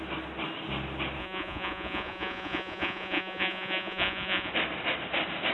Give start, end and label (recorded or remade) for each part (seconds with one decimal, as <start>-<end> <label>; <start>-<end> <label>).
0.0-1.2 recorded; 1.2-4.5 remade; 4.5-5.5 recorded

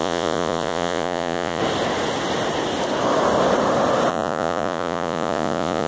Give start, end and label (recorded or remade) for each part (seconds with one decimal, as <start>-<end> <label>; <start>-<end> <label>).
0.0-1.6 remade; 1.6-4.1 recorded; 4.1-5.9 remade

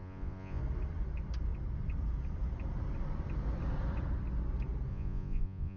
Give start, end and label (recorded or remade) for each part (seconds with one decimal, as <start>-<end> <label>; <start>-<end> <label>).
0.0-0.6 remade; 0.6-4.9 recorded; 4.9-5.8 remade